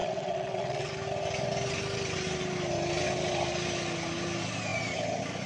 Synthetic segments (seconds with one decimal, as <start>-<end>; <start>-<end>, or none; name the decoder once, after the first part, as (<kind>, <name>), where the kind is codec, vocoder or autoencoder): 0.0-0.9 (vocoder, WaveNeXt)